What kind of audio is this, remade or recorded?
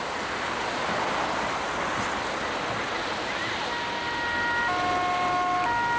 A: recorded